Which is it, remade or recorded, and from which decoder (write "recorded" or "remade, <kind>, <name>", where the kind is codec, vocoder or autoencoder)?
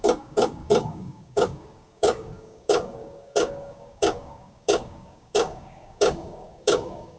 remade, codec, DAC